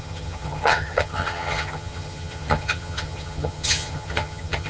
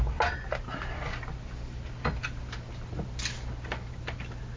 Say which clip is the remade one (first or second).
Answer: first